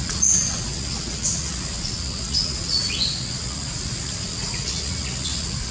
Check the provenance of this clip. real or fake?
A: fake